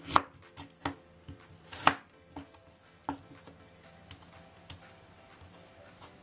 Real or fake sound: real